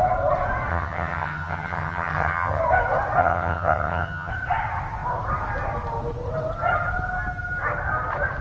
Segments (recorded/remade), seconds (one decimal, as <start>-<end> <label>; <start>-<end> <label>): 0.0-0.7 recorded; 0.7-2.6 remade; 2.6-3.2 recorded; 3.2-4.3 remade; 4.3-8.4 recorded